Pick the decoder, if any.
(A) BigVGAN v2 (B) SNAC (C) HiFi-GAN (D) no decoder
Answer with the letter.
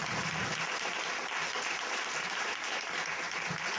A